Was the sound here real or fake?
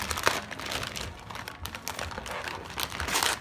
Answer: real